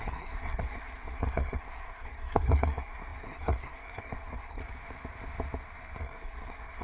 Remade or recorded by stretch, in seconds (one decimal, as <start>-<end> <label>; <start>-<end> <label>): 0.0-4.6 remade; 4.6-6.0 recorded; 6.0-6.8 remade